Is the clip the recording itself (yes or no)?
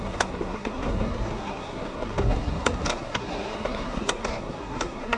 no